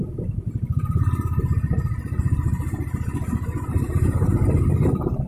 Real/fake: real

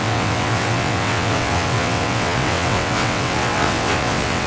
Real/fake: fake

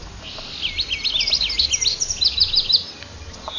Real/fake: real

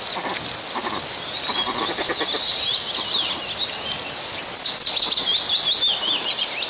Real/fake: real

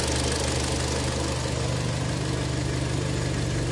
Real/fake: real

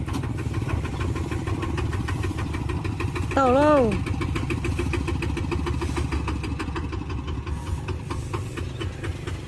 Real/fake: real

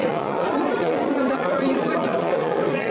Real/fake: fake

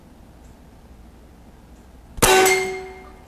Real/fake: real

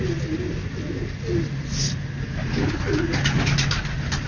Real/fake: real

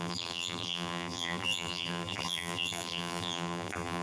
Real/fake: fake